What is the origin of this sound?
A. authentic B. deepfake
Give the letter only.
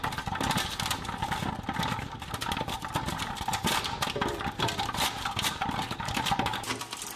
B